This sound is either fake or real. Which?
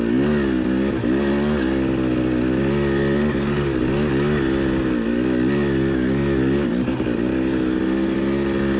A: real